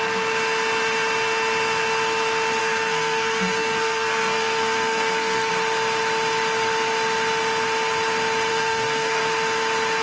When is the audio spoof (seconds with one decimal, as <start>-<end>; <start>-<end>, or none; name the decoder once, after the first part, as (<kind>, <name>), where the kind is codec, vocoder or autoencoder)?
2.6-5.5 (codec, SNAC); 8.5-9.2